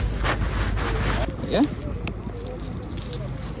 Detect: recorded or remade recorded